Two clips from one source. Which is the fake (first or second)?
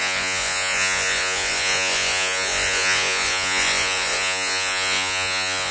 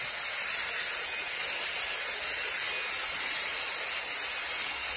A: first